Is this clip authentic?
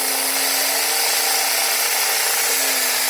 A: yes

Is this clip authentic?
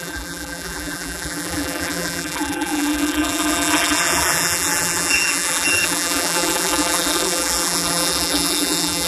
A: no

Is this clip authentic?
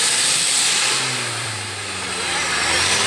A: no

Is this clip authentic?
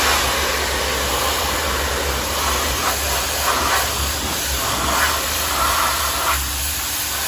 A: yes